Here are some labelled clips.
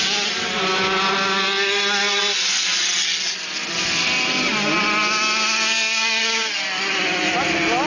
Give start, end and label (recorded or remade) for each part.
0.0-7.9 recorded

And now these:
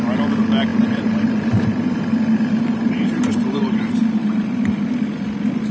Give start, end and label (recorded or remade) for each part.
0.0-0.7 recorded; 0.7-3.8 remade; 3.8-4.2 recorded; 4.2-4.9 remade; 4.9-5.7 recorded

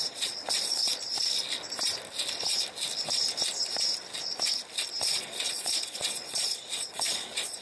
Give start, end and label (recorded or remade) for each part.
0.0-0.8 remade; 0.8-5.0 recorded; 5.0-7.6 remade

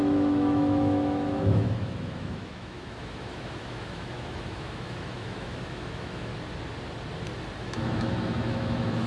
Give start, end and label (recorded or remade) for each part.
0.0-6.3 remade; 6.3-7.6 recorded; 7.6-9.1 remade

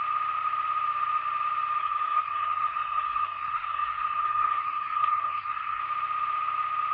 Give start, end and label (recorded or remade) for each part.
0.0-1.8 recorded; 1.8-5.8 remade; 5.8-6.9 recorded

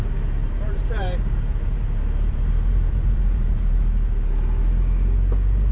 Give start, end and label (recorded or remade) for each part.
0.0-0.4 recorded; 0.4-3.8 remade; 3.8-5.7 recorded

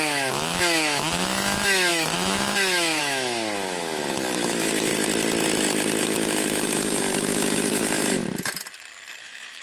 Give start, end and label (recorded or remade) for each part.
0.0-4.9 remade; 4.9-6.0 recorded; 6.0-8.2 remade; 8.2-9.2 recorded; 9.2-9.6 remade

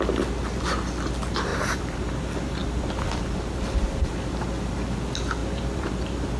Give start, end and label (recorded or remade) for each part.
0.0-1.5 recorded; 1.5-2.1 remade; 2.1-5.4 recorded; 5.4-5.9 remade; 5.9-6.4 recorded